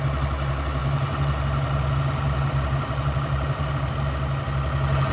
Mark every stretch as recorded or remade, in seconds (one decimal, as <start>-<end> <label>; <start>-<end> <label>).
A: 0.0-5.1 recorded

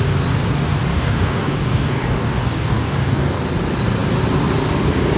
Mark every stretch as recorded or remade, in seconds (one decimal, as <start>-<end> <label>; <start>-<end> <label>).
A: 0.0-0.9 recorded; 0.9-3.4 remade; 3.4-5.2 recorded